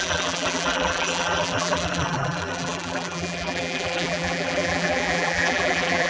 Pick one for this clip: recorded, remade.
remade